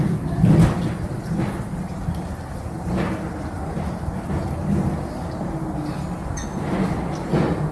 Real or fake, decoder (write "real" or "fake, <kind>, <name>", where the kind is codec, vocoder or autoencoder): real